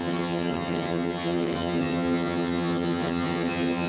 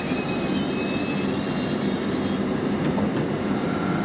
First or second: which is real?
second